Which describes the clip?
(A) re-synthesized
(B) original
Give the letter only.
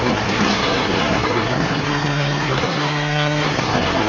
A